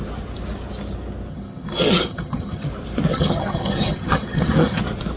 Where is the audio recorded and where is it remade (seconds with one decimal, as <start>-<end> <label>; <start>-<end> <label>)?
0.0-1.3 recorded; 1.3-2.7 remade; 2.7-3.1 recorded; 3.1-4.8 remade; 4.8-5.2 recorded